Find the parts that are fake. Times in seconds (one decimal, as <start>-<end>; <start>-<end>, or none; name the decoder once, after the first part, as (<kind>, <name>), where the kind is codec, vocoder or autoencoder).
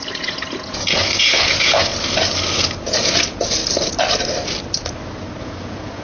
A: 0.0-1.9 (vocoder, Vocos); 2.5-3.6; 5.4-6.0